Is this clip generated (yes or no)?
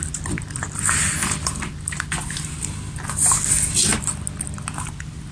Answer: no